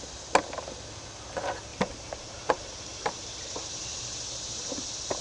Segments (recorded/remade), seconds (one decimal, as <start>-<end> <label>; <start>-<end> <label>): 0.0-1.7 recorded; 1.7-4.8 remade; 4.8-5.2 recorded